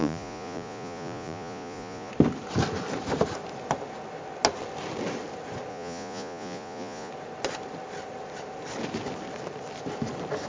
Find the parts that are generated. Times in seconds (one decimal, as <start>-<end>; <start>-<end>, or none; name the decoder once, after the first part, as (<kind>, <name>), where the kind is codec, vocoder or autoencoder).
0.0-2.1 (vocoder, Vocos); 5.7-7.1

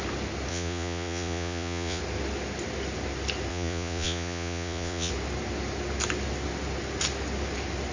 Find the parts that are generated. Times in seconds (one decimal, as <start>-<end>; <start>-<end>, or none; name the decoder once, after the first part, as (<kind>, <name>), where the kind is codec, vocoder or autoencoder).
0.5-2.0 (vocoder, Vocos); 3.5-5.1

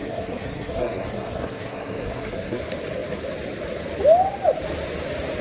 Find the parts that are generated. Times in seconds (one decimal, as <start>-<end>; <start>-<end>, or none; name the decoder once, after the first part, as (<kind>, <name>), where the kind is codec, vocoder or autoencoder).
0.0-2.6 (codec, SNAC)

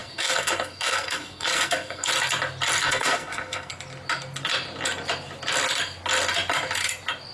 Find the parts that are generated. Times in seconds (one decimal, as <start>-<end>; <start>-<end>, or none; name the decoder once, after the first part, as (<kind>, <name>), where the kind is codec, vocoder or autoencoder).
0.0-2.1 (codec, SNAC); 2.8-3.7